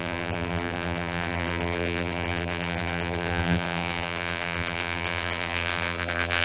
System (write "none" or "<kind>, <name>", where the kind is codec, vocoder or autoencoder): vocoder, BigVGAN v2